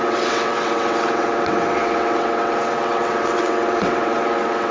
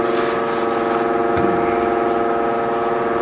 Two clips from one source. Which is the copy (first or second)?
first